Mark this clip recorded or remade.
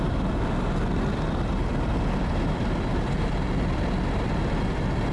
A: remade